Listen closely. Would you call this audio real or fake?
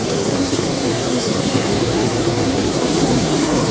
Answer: fake